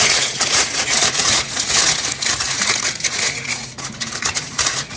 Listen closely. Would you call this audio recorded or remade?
remade